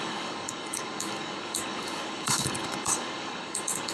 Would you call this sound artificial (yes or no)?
yes